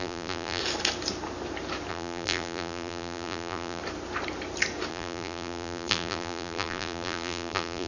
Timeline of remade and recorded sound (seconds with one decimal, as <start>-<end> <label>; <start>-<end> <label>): 0.0-0.6 remade; 0.6-1.9 recorded; 1.9-3.8 remade; 3.8-4.9 recorded; 4.9-7.9 remade